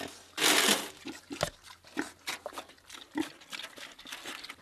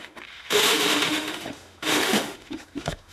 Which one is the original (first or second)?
first